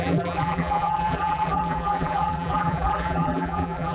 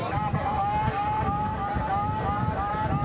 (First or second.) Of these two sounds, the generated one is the first